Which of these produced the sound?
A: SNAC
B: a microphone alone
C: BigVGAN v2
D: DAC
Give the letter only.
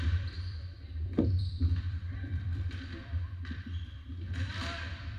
C